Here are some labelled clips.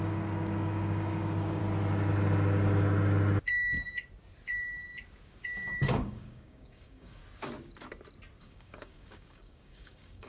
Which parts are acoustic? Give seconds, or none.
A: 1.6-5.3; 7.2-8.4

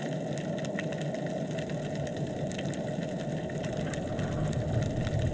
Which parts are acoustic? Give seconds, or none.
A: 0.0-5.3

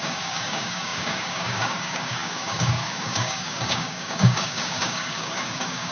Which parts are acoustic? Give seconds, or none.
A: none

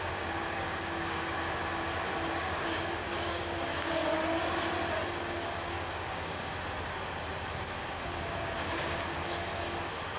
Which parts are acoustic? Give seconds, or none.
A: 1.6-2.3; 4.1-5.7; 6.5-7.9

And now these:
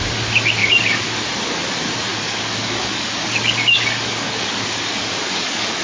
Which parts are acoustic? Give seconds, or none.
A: 0.0-0.6; 1.2-2.1